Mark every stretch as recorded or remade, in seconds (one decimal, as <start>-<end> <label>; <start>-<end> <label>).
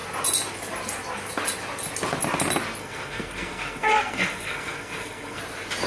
0.0-2.8 recorded; 2.8-5.4 remade; 5.4-5.9 recorded